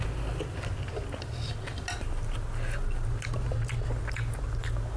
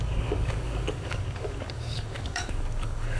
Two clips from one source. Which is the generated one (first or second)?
second